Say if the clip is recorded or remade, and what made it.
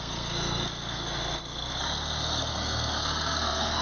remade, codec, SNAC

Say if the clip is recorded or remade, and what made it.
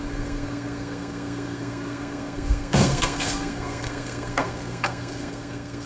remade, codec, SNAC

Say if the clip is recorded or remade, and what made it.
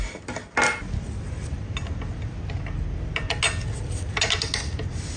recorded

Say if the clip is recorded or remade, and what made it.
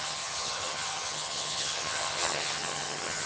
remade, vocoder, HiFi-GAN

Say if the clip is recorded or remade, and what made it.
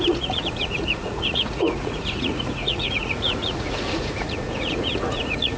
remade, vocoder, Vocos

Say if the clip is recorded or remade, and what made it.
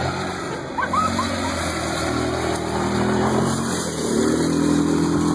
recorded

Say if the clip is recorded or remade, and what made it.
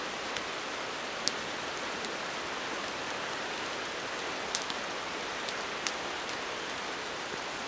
recorded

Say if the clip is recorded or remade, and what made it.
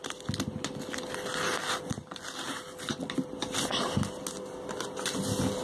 recorded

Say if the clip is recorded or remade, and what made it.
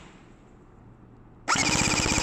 recorded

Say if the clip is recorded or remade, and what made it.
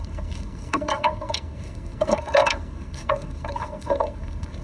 remade, codec, SNAC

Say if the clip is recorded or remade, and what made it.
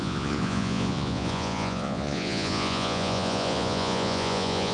remade, vocoder, Vocos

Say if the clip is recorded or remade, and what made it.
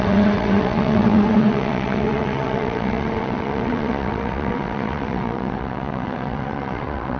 remade, vocoder, WaveNeXt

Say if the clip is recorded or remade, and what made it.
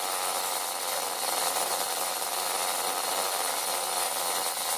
recorded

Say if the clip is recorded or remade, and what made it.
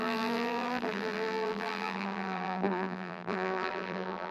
remade, vocoder, BigVGAN v2